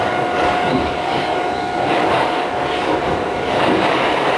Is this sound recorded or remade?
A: remade